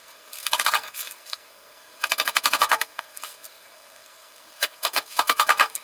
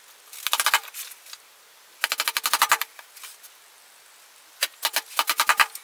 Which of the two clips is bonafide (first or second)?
second